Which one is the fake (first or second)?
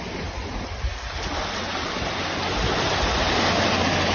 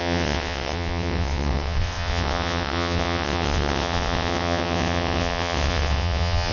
second